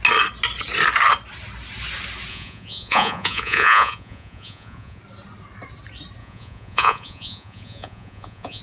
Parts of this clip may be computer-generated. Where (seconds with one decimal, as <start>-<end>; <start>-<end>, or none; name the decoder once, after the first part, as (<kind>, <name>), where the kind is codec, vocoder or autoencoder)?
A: 2.3-5.0 (vocoder, Vocos); 6.2-8.6